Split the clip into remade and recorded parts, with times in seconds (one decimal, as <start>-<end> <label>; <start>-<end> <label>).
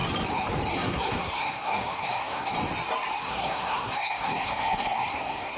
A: 0.0-0.7 recorded; 0.7-2.5 remade; 2.5-3.2 recorded; 3.2-5.6 remade